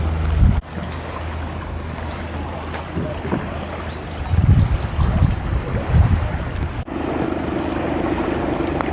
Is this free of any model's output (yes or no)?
yes